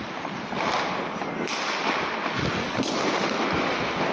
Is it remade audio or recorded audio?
recorded